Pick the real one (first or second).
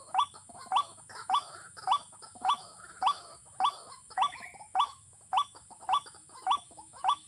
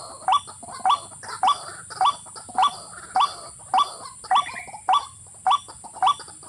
second